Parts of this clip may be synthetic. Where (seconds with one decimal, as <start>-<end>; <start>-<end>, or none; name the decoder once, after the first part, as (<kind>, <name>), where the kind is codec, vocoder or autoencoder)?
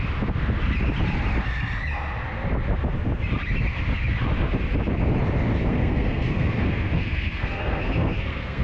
5.7-8.6 (codec, SNAC)